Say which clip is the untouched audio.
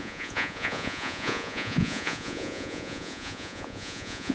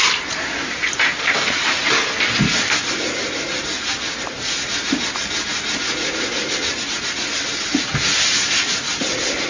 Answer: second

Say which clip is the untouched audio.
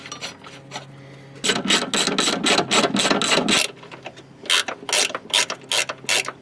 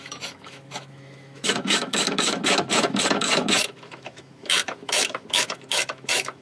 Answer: first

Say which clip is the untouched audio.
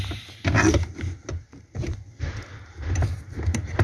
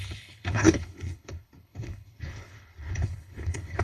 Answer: first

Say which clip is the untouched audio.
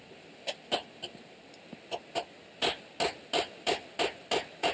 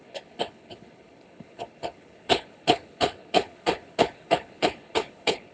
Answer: first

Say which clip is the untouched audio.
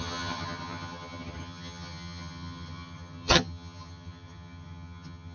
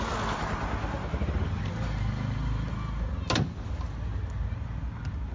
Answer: second